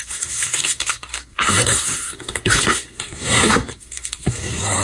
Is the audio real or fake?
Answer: fake